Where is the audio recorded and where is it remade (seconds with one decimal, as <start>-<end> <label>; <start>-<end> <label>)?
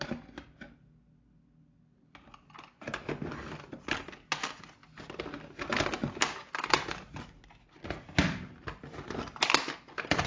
0.0-10.3 recorded